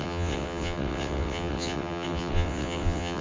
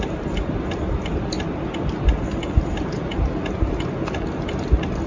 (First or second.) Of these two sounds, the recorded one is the second